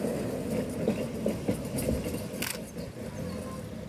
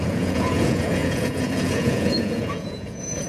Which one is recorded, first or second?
first